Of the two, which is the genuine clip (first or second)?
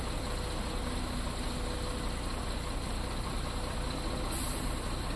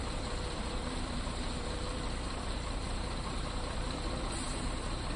first